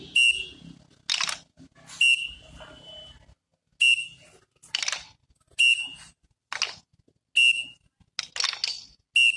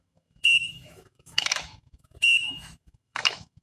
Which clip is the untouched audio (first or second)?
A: first